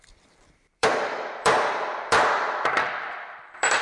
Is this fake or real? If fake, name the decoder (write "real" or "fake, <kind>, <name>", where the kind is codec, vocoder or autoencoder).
fake, vocoder, BigVGAN v2